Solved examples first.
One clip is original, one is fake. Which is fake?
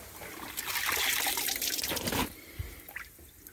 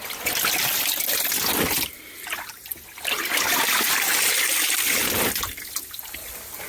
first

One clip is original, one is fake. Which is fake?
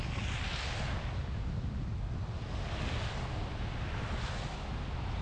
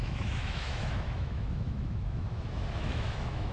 second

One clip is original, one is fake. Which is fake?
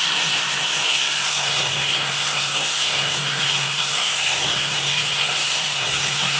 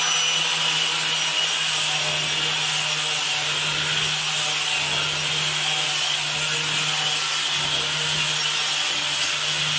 first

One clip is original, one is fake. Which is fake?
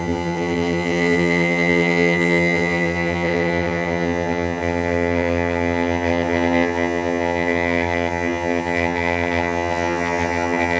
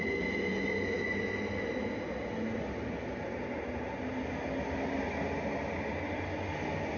first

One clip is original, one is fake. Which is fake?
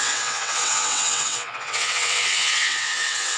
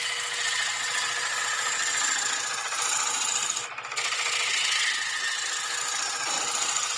first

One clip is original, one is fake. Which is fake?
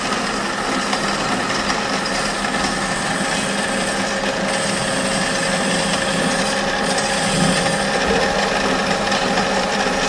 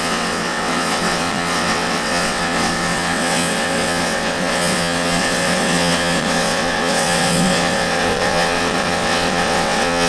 second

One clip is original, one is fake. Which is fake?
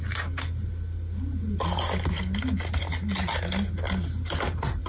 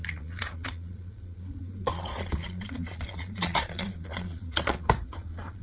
second